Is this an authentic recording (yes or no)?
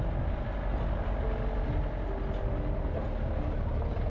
yes